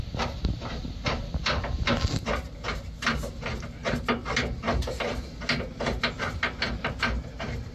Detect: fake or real real